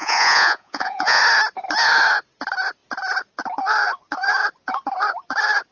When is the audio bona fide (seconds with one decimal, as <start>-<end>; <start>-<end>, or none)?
1.2-5.7